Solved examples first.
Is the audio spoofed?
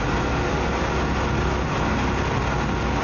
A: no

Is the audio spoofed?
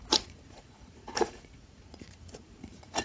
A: yes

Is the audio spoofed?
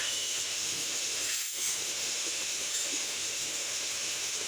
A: yes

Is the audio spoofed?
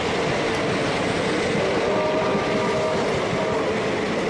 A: no